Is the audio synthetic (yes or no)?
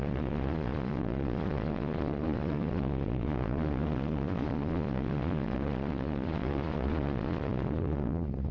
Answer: yes